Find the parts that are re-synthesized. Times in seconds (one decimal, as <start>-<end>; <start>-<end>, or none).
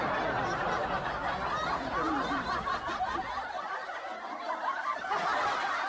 none